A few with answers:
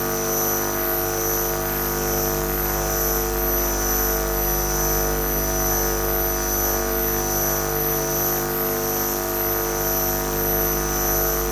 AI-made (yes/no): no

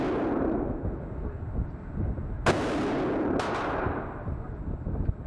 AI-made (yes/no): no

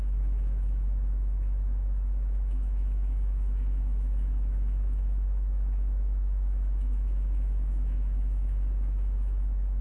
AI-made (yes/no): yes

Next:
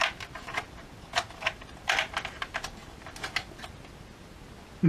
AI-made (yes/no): no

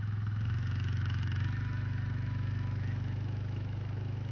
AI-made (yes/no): yes